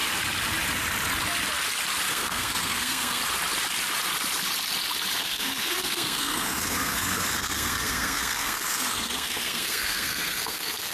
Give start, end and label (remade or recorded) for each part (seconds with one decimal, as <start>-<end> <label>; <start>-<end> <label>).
0.0-2.1 recorded; 2.1-3.2 remade; 3.2-5.2 recorded; 5.2-10.9 remade

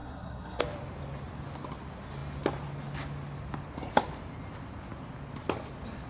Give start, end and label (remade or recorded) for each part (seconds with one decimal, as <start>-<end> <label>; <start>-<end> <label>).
0.0-0.6 remade; 0.6-6.1 recorded

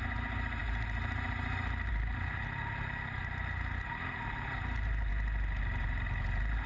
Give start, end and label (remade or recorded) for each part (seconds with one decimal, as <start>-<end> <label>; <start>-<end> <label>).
0.0-6.7 recorded

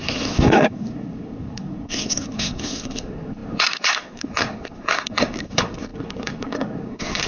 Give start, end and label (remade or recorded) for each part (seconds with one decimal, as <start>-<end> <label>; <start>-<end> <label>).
0.0-7.3 remade

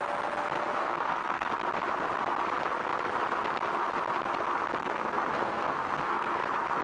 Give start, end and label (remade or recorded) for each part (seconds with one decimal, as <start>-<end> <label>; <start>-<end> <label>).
0.0-0.8 recorded; 0.8-1.5 remade; 1.5-4.8 recorded; 4.8-6.3 remade; 6.3-6.8 recorded

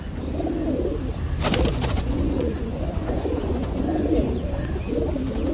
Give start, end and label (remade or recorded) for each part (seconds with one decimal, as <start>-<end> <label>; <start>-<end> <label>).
0.0-1.7 recorded; 1.7-5.0 remade; 5.0-5.5 recorded

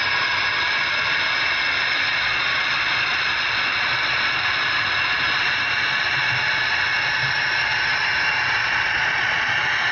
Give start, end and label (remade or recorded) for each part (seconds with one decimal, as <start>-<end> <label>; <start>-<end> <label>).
0.0-2.1 recorded; 2.1-4.4 remade; 4.4-8.6 recorded; 8.6-9.5 remade; 9.5-9.9 recorded

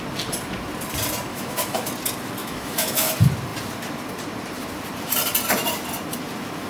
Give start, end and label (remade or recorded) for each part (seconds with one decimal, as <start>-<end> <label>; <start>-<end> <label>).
0.0-1.3 recorded; 1.3-1.9 remade; 1.9-2.4 recorded; 2.4-3.1 remade; 3.1-6.7 recorded